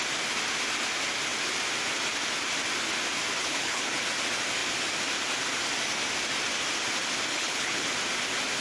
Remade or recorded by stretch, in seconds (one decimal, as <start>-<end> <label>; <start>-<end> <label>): 0.0-3.4 recorded; 3.4-4.0 remade; 4.0-7.3 recorded; 7.3-7.8 remade; 7.8-8.6 recorded